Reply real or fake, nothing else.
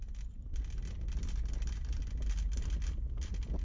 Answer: real